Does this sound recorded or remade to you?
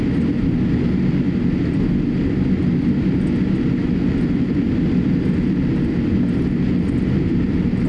recorded